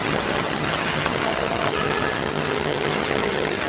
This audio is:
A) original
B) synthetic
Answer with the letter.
B